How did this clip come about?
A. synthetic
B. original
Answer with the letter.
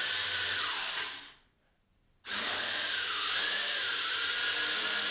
B